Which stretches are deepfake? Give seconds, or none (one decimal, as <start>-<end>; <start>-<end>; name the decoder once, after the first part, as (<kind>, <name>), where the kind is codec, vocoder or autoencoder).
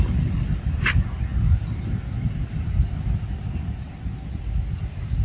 none